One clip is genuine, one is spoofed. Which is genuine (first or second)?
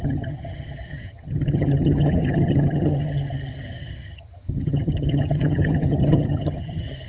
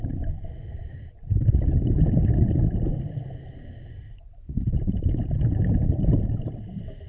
second